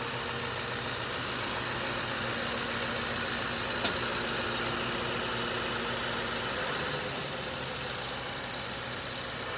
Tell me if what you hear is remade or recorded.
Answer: recorded